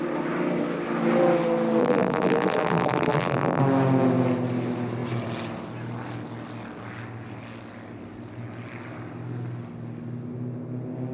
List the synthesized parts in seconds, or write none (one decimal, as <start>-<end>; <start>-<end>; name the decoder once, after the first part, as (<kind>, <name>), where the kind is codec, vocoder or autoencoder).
1.8-3.6 (vocoder, BigVGAN v2)